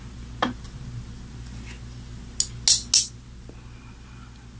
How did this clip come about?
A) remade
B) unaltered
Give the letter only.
B